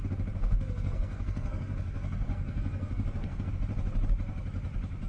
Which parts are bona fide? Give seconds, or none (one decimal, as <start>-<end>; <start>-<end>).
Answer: 0.0-0.4; 3.5-5.1